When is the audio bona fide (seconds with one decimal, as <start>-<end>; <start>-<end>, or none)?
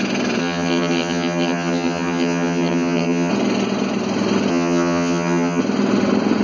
0.0-0.4; 3.3-4.5; 5.6-6.4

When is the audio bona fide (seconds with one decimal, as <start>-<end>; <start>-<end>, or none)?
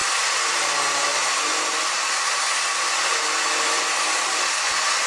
0.0-5.1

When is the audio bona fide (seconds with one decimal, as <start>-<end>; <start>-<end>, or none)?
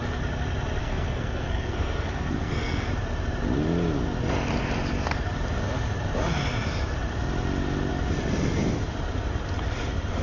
0.0-0.8; 2.9-10.2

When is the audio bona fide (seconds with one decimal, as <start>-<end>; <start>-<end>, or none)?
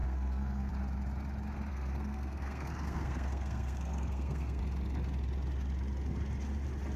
0.7-1.7; 4.6-7.0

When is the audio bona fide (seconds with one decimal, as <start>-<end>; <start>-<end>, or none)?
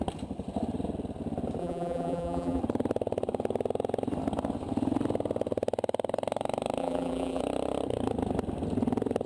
0.0-1.6; 2.6-6.8; 7.4-9.3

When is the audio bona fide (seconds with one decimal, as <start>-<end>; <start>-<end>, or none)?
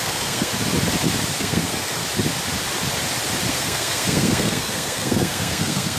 0.5-1.4; 2.0-3.5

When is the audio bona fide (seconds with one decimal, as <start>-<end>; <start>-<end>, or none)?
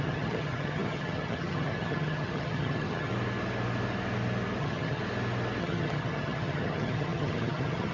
3.1-4.6; 5.0-5.6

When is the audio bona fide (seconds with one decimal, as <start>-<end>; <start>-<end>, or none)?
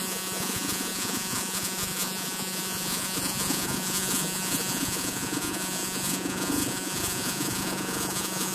none